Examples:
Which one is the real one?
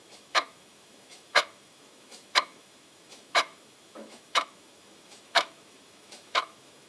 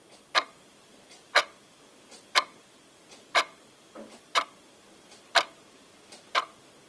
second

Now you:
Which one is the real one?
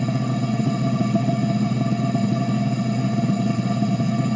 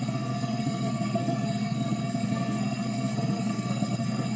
first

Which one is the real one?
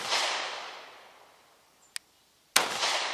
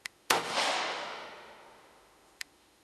first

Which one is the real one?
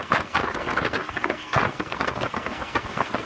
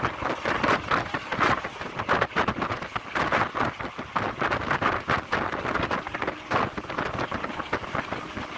second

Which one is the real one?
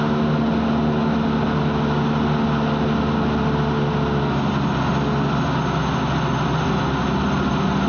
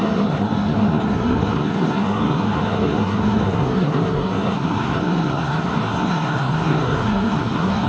first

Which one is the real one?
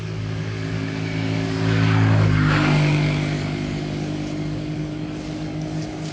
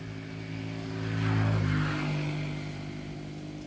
second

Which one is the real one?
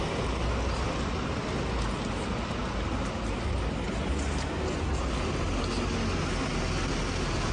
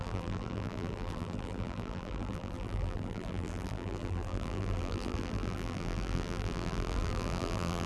first